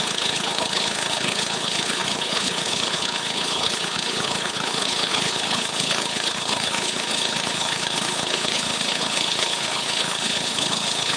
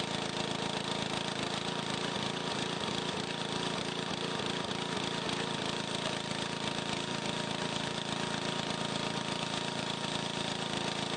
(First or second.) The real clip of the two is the second